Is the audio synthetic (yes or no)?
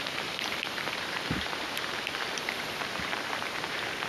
yes